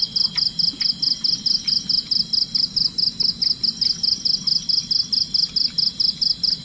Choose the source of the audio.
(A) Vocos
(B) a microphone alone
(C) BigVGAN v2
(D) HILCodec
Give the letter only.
B